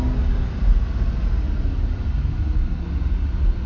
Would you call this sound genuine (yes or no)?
yes